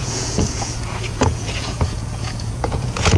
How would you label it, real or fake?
fake